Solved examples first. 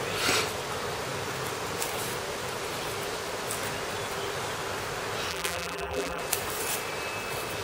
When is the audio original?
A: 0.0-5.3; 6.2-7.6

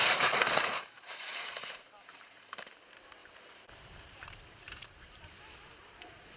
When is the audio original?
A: 2.4-3.2

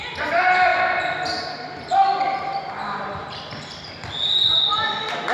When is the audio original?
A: 0.0-0.7; 3.9-5.3

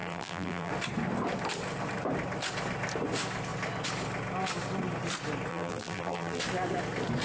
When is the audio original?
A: 0.7-5.5; 6.4-7.2

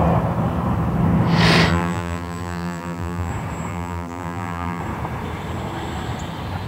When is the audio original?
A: 0.0-1.7; 3.3-3.7; 4.8-6.7